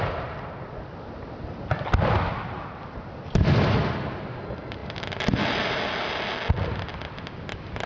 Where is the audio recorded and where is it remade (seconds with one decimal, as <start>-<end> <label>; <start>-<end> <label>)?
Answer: 0.0-7.9 recorded